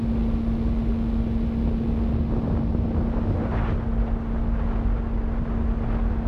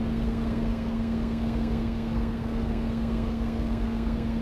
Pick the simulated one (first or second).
second